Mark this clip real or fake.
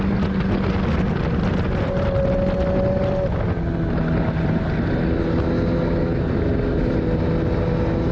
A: real